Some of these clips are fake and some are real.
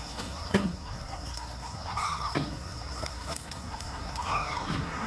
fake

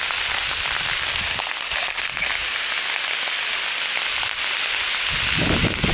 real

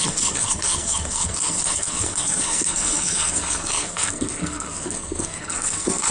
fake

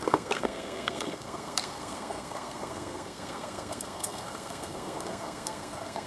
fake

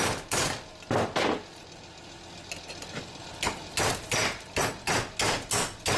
real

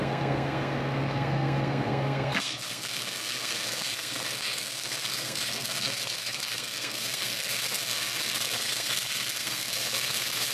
fake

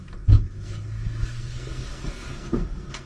fake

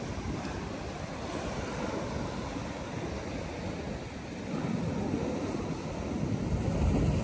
real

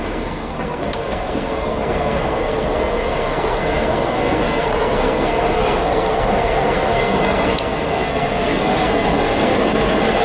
fake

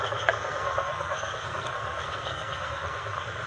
fake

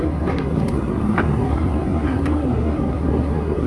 fake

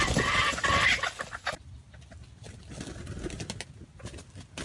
real